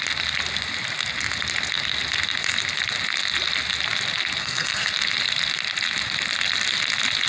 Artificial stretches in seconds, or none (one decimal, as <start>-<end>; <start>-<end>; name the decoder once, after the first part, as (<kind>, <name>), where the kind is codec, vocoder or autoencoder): 4.4-4.9 (codec, SNAC)